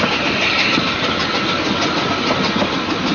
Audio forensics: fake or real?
real